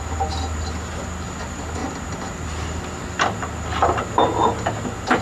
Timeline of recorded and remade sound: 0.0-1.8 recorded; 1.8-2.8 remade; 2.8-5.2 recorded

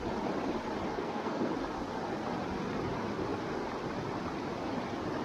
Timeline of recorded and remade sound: 0.0-0.9 recorded; 0.9-1.5 remade; 1.5-5.2 recorded